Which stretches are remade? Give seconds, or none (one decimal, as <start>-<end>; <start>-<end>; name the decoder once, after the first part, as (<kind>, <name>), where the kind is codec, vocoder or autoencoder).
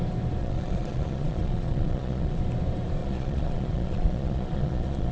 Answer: 0.4-2.4 (vocoder, Vocos); 3.0-5.1